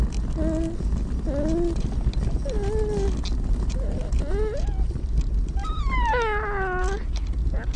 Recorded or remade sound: recorded